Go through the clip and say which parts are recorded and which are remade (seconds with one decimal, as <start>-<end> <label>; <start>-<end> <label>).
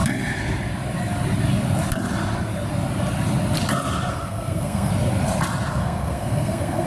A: 0.0-4.1 recorded; 4.1-4.9 remade; 4.9-5.7 recorded; 5.7-6.9 remade